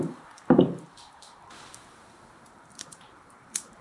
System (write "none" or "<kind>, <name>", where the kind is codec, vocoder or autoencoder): vocoder, BigVGAN v2